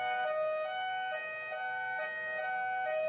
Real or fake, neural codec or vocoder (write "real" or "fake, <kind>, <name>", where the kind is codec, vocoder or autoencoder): real